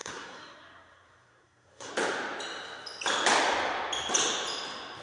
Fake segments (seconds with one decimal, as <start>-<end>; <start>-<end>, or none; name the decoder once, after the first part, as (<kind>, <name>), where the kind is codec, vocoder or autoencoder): 0.0-1.9 (codec, SNAC)